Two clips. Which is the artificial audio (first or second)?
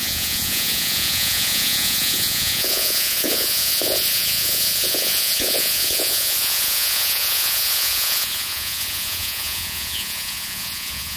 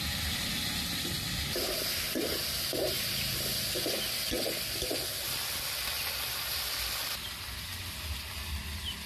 first